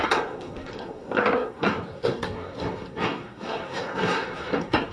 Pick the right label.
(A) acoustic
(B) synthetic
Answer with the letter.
B